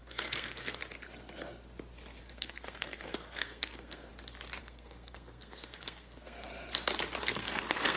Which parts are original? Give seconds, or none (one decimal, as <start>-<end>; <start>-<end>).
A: 0.8-2.2; 4.1-4.6; 6.5-7.2